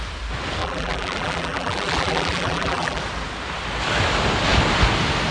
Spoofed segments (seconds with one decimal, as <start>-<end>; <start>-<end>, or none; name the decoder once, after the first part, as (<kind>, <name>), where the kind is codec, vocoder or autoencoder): 0.6-3.0 (vocoder, BigVGAN v2)